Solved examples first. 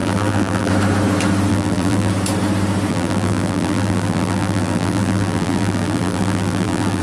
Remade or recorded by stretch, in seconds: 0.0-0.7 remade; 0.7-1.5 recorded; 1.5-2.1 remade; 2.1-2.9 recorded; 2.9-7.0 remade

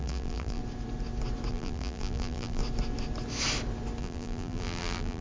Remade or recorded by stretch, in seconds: 0.0-0.6 remade; 0.6-1.5 recorded; 1.5-2.6 remade; 2.6-4.0 recorded; 4.0-5.2 remade

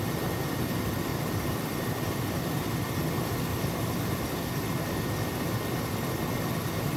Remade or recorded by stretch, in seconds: 0.0-1.1 recorded; 1.1-2.4 remade; 2.4-3.5 recorded; 3.5-4.5 remade; 4.5-7.0 recorded

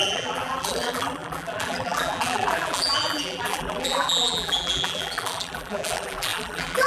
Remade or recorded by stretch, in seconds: 0.0-6.9 remade

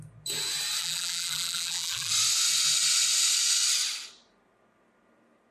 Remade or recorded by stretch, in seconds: 0.0-0.8 recorded; 0.8-2.1 remade; 2.1-5.5 recorded

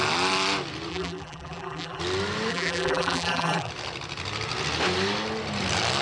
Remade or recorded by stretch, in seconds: 0.0-0.9 recorded; 0.9-2.0 remade; 2.0-2.5 recorded; 2.5-3.7 remade; 3.7-6.0 recorded

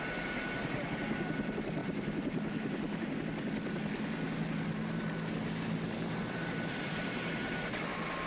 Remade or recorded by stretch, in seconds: 0.0-1.8 recorded; 1.8-3.2 remade; 3.2-6.1 recorded; 6.1-7.8 remade; 7.8-8.3 recorded

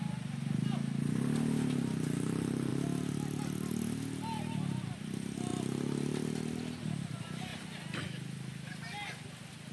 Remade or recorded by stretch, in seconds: 0.0-9.7 recorded